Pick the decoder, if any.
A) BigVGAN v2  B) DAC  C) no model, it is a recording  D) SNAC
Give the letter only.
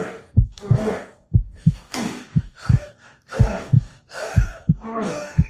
B